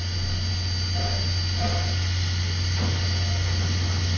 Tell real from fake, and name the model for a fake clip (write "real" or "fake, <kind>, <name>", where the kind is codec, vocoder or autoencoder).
real